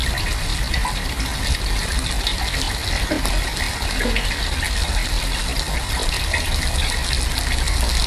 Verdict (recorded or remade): recorded